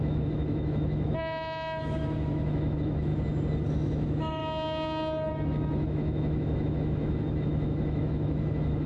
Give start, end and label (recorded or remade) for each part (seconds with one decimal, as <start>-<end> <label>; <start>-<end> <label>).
0.0-3.1 remade; 3.1-3.7 recorded; 3.7-4.4 remade; 4.4-5.3 recorded; 5.3-8.9 remade